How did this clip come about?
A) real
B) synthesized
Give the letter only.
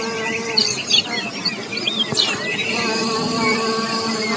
A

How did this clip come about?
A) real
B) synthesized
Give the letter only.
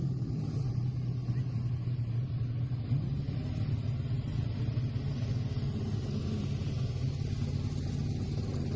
A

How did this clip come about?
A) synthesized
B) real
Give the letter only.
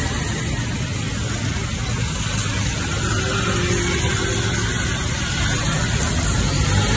B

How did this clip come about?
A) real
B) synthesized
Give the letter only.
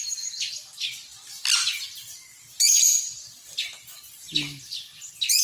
A